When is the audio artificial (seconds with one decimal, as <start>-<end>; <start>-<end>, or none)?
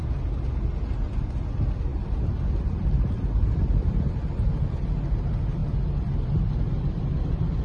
none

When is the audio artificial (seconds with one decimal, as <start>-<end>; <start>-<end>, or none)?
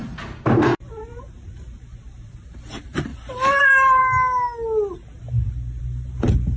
0.0-3.1; 3.6-4.0; 5.8-6.6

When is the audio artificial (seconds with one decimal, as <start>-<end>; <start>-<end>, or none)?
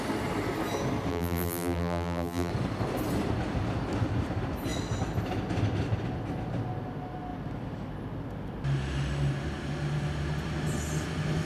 1.1-2.5